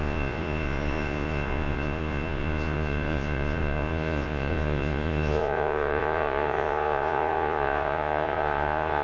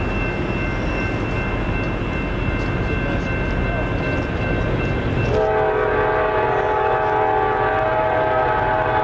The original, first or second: second